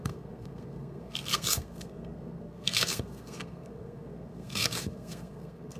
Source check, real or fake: fake